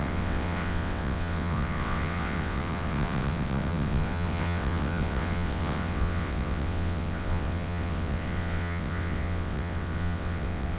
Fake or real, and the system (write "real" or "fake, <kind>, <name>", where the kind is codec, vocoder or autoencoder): fake, vocoder, WaveNeXt